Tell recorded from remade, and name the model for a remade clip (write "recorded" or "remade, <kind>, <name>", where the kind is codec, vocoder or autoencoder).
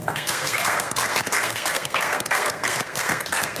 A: remade, codec, SNAC